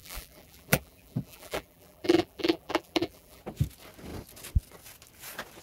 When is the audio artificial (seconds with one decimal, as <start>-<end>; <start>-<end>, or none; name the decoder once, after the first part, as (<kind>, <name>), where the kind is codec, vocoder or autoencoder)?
0.0-3.4 (vocoder, BigVGAN v2)